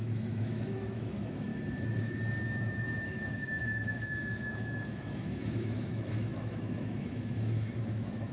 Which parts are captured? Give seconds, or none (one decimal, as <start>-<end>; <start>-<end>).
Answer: 1.5-2.4